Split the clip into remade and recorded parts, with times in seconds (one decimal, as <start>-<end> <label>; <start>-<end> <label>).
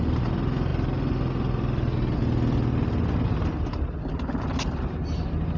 0.0-5.6 recorded